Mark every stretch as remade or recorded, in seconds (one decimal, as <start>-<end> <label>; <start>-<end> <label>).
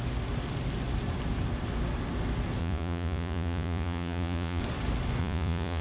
0.0-2.6 recorded; 2.6-4.6 remade; 4.6-5.2 recorded; 5.2-5.8 remade